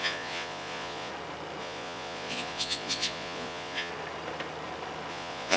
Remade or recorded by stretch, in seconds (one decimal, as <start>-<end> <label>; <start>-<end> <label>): 0.0-1.1 remade; 1.1-1.6 recorded; 1.6-3.9 remade; 3.9-5.1 recorded; 5.1-5.6 remade